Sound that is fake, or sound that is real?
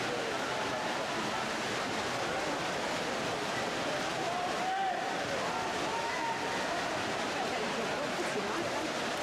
real